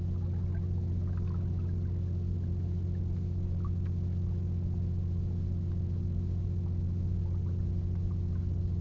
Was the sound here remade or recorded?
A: recorded